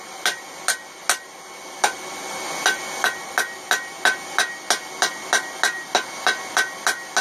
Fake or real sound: real